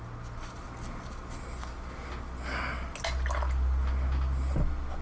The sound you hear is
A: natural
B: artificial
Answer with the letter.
A